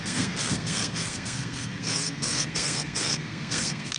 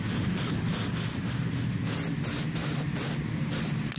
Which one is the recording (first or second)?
second